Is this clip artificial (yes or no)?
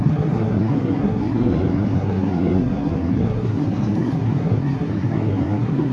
yes